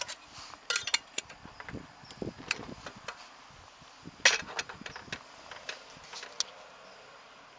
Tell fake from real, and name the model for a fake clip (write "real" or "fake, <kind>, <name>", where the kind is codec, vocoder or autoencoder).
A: real